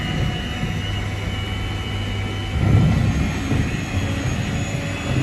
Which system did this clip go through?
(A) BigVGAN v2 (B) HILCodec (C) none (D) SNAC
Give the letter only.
C